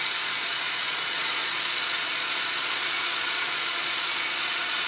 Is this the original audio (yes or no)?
no